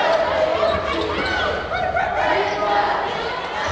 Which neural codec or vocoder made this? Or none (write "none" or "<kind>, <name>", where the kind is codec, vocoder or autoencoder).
none